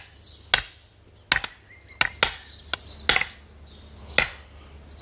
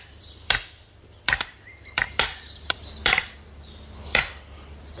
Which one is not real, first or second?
second